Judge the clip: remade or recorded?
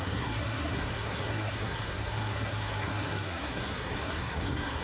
remade